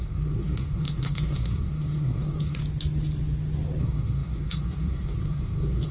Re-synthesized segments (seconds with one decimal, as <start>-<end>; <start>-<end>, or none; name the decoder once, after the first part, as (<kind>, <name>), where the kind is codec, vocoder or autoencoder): 0.0-2.6 (codec, SNAC); 3.8-5.9